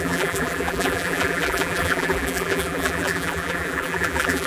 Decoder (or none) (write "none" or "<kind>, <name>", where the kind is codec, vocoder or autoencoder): vocoder, BigVGAN v2